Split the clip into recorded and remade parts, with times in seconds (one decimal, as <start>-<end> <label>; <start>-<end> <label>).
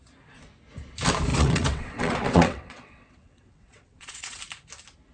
0.0-1.3 recorded; 1.3-4.4 remade; 4.4-5.1 recorded